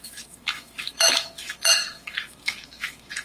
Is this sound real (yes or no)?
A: no